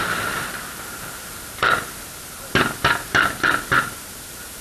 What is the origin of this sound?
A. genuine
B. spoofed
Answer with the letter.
A